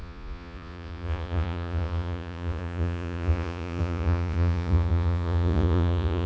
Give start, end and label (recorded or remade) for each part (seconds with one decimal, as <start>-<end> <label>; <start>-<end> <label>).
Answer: 0.0-6.3 remade